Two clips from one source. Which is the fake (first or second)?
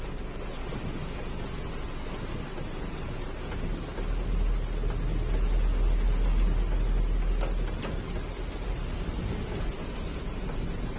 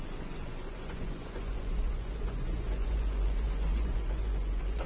second